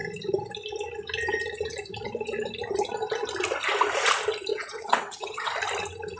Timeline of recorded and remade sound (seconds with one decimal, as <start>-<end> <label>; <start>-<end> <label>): 0.0-4.5 recorded; 4.5-5.5 remade; 5.5-6.2 recorded